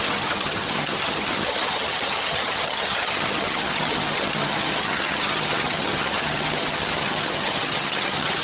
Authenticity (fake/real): fake